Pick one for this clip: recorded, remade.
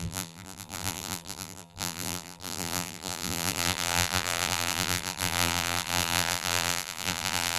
remade